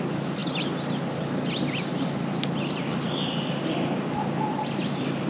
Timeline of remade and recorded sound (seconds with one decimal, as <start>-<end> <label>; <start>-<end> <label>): 0.0-5.3 recorded